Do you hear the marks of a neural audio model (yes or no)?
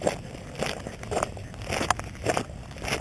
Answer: no